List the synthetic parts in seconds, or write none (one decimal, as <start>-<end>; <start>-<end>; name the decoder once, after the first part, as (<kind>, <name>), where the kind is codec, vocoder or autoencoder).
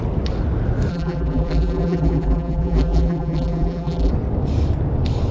0.9-4.1 (vocoder, BigVGAN v2)